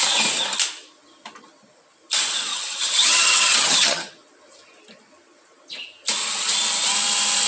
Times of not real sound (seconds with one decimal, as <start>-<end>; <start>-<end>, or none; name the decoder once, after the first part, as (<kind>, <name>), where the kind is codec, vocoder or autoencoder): 2.5-4.1 (vocoder, HiFi-GAN)